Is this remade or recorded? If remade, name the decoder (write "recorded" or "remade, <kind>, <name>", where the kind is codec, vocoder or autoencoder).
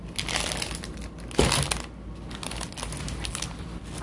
recorded